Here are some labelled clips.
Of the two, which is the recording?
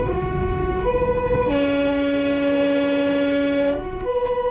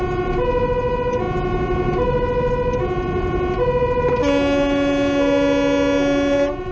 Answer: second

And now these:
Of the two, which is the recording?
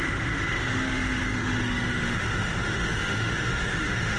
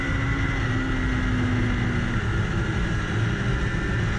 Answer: second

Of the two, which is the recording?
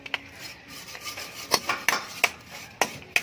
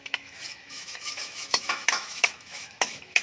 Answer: first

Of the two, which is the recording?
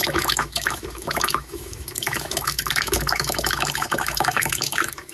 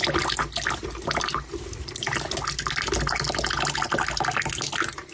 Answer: second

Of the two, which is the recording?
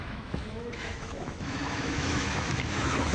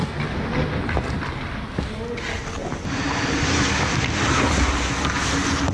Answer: second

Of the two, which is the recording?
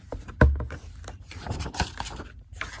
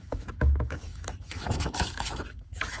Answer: first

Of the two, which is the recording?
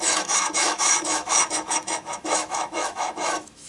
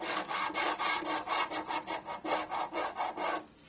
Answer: second